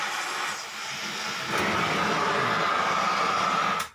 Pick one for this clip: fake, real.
real